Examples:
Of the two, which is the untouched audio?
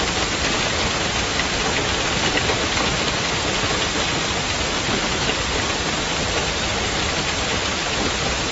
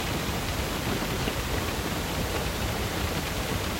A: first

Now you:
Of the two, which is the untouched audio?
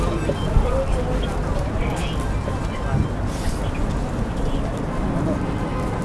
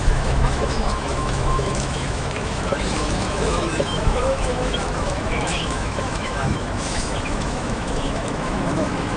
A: first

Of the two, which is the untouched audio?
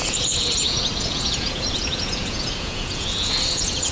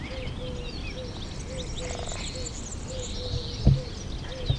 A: second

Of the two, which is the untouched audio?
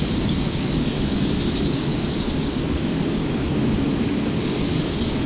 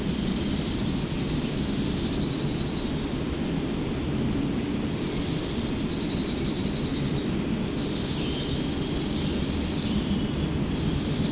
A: second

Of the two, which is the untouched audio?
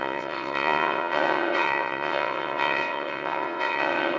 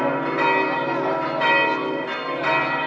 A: second